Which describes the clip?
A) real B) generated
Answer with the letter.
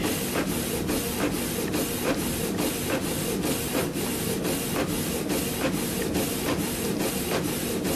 A